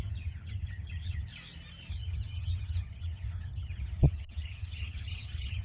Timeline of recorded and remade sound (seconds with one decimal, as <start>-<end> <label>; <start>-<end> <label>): 0.0-1.3 remade; 1.3-1.9 recorded; 1.9-5.6 remade